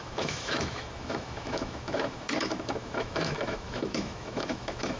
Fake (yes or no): yes